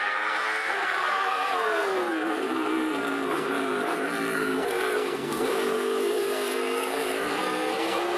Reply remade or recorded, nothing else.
remade